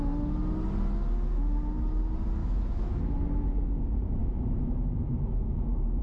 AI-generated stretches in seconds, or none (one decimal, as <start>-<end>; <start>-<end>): 2.4-3.0; 4.2-6.0